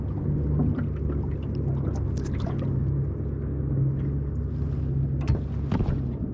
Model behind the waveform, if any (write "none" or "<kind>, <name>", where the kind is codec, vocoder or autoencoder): none